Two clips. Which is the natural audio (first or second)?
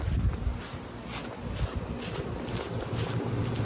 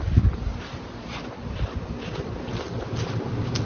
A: first